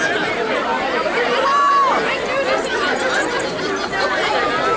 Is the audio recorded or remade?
recorded